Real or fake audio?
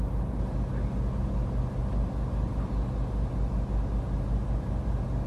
real